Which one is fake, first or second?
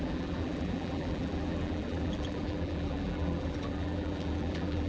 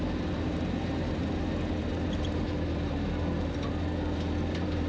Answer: first